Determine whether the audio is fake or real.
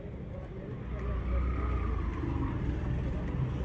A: real